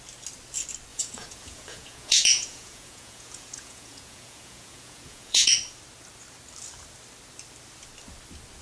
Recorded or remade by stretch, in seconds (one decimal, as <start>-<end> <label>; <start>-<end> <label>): 0.0-0.9 recorded; 0.9-5.5 remade; 5.5-8.6 recorded